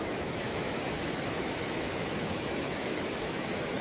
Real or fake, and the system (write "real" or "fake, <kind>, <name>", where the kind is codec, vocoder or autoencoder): fake, autoencoder, DAC-VAE